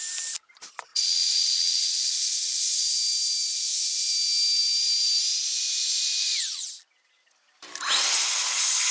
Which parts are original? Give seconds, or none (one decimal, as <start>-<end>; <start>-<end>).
0.0-0.9; 2.6-6.2; 6.7-8.9